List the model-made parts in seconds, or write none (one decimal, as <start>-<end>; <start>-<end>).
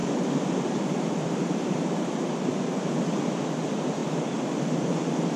0.0-5.4